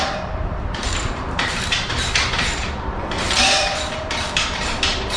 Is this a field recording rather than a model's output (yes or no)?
no